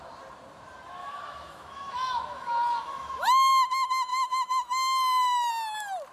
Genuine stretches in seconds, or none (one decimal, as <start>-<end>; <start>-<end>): 0.0-1.0; 3.5-4.1; 5.5-6.1